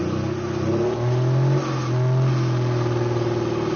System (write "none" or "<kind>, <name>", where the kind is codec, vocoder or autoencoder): none